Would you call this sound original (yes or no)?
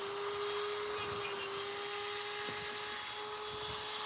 yes